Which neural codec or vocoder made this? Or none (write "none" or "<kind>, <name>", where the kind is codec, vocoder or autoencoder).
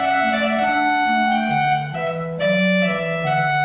none